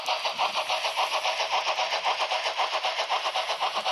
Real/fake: real